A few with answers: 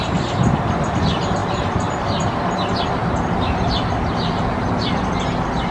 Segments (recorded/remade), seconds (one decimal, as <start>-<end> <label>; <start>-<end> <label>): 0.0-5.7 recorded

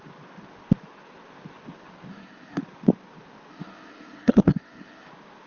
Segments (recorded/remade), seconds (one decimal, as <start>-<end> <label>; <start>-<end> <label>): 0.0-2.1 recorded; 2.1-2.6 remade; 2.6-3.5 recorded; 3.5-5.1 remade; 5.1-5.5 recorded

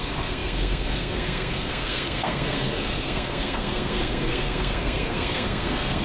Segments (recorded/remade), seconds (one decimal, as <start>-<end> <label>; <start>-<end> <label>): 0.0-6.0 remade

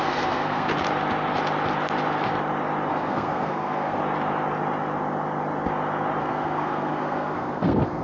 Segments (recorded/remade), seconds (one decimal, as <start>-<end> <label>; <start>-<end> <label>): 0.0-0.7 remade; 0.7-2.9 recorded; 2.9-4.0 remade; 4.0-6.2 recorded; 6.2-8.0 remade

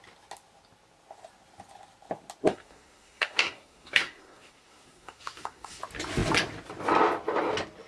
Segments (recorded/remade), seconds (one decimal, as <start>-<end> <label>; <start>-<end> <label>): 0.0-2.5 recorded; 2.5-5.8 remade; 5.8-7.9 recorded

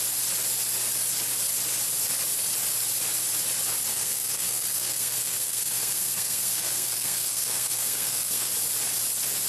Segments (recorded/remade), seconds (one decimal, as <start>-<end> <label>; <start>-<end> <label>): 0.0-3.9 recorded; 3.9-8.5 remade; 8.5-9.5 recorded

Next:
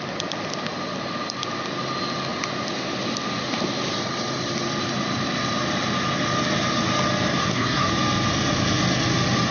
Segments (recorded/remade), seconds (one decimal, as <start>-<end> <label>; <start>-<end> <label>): 0.0-7.4 recorded; 7.4-7.9 remade; 7.9-9.5 recorded